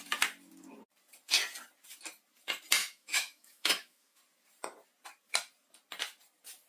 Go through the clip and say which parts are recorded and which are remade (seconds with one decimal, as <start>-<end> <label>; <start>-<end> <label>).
0.0-2.8 recorded; 2.8-4.2 remade; 4.2-6.7 recorded

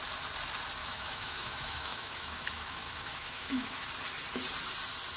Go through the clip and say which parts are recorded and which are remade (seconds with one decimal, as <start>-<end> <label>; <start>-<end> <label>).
0.0-0.8 recorded; 0.8-3.9 remade; 3.9-5.2 recorded

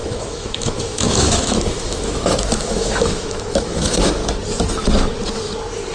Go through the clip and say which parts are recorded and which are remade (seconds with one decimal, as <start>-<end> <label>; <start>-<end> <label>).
0.0-4.2 remade; 4.2-5.9 recorded

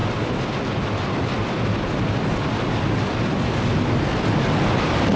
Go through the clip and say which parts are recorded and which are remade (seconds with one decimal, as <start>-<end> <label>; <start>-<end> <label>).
0.0-5.2 recorded

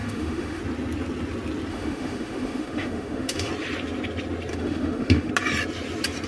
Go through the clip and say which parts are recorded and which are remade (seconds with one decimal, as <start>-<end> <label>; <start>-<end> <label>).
0.0-0.6 remade; 0.6-1.7 recorded; 1.7-3.5 remade; 3.5-4.5 recorded; 4.5-5.3 remade; 5.3-6.3 recorded

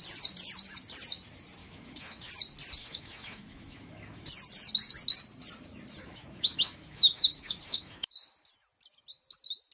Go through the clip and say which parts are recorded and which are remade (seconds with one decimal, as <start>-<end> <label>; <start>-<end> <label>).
0.0-1.6 recorded; 1.6-2.3 remade; 2.3-2.8 recorded; 2.8-4.3 remade; 4.3-6.0 recorded; 6.0-8.1 remade; 8.1-9.7 recorded

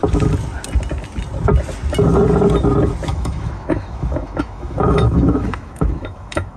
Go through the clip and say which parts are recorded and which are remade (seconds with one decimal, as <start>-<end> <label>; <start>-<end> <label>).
0.0-3.1 recorded; 3.1-6.6 remade

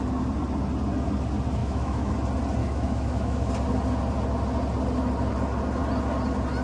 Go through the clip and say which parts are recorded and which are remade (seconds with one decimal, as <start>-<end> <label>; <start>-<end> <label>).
0.0-1.6 recorded; 1.6-2.1 remade; 2.1-2.6 recorded; 2.6-3.5 remade; 3.5-6.6 recorded